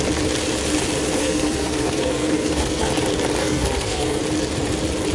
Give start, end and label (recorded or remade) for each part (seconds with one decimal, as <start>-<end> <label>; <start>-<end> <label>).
0.0-1.2 recorded; 1.2-2.9 remade; 2.9-3.4 recorded; 3.4-4.2 remade; 4.2-5.1 recorded